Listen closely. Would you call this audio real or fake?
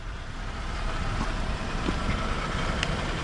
fake